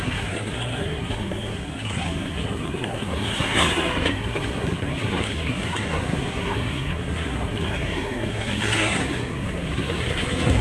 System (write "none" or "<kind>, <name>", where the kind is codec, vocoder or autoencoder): codec, SNAC